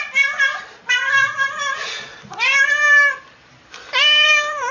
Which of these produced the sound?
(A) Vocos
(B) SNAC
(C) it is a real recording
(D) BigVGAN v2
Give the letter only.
D